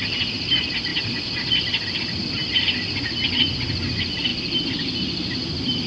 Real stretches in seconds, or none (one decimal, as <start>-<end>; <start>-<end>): 0.0-5.9